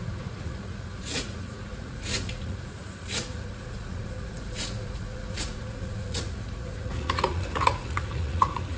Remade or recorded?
remade